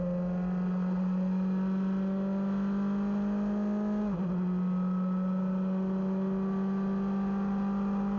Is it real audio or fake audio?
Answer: real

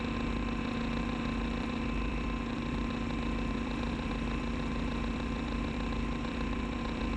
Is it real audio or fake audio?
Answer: fake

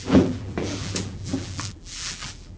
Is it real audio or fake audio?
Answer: fake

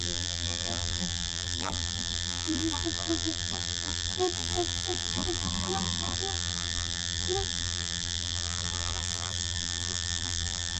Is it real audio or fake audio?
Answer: fake